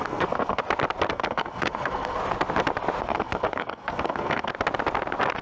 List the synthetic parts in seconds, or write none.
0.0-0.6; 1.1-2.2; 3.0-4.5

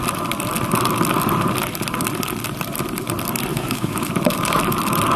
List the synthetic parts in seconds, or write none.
3.5-4.1

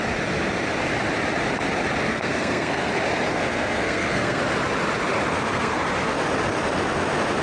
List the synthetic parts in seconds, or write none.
2.1-2.9; 3.3-4.4; 5.3-5.8

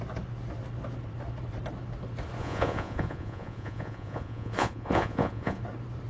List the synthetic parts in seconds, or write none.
2.4-5.6

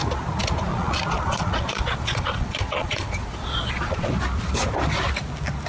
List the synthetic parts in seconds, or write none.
0.7-4.1